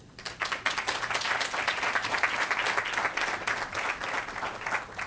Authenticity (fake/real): real